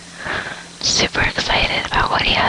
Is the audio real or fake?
fake